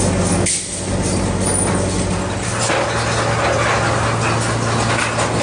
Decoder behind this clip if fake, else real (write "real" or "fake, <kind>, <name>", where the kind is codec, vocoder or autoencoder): real